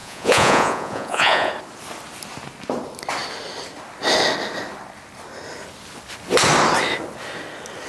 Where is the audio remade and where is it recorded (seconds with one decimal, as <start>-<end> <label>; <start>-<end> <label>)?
0.0-1.5 remade; 1.5-7.9 recorded